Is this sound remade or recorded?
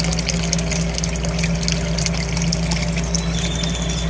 recorded